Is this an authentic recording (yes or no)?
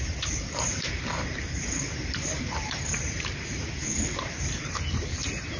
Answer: no